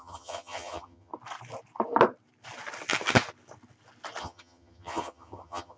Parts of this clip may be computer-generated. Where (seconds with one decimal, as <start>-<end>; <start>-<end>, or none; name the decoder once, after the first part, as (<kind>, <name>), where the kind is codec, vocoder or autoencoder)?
0.0-1.1 (vocoder, HiFi-GAN); 4.2-5.8